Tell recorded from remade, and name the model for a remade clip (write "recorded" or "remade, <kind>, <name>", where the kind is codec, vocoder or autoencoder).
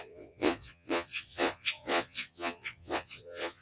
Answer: remade, vocoder, Vocos